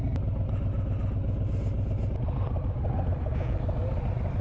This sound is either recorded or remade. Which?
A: recorded